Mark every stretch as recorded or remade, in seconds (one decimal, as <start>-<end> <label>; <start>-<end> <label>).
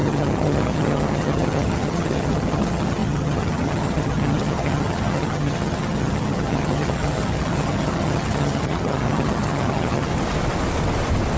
0.0-10.1 remade; 10.1-11.4 recorded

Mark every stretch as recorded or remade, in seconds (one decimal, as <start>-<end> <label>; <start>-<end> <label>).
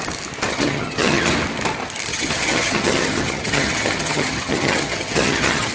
0.0-0.5 recorded; 0.5-1.3 remade; 1.3-2.1 recorded; 2.1-5.7 remade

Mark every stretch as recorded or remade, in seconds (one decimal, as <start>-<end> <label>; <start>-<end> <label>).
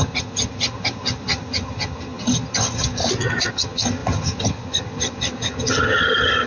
0.0-3.0 remade; 3.0-3.5 recorded; 3.5-6.5 remade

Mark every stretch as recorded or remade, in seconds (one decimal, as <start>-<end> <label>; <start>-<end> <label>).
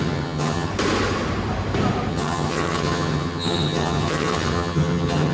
0.0-0.7 remade; 0.7-2.1 recorded; 2.1-5.3 remade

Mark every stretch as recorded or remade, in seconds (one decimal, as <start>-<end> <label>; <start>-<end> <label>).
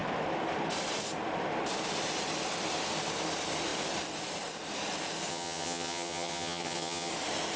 0.0-5.3 recorded; 5.3-7.1 remade; 7.1-7.6 recorded